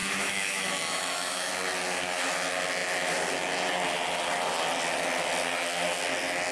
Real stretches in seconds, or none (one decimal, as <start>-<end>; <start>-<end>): 1.5-6.5